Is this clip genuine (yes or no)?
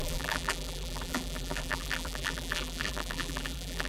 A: no